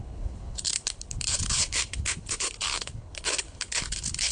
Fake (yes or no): yes